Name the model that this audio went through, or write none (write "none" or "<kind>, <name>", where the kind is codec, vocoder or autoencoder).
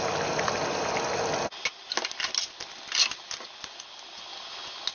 none